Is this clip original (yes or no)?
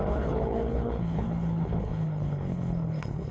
no